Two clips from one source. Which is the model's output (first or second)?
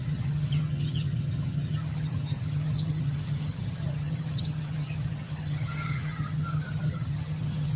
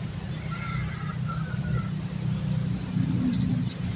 first